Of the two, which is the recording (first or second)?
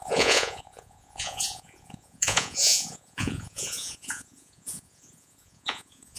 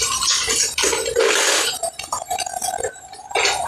second